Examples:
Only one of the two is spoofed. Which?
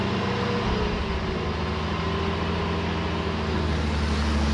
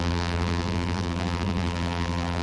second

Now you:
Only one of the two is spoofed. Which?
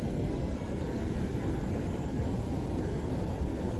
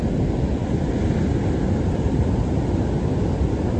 first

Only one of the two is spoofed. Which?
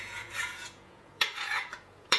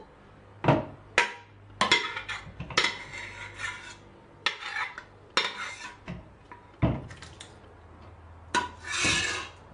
first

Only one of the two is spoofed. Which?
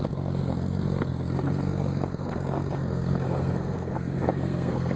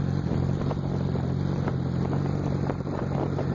first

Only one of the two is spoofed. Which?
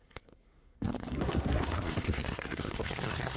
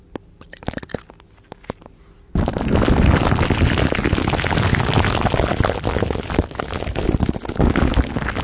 first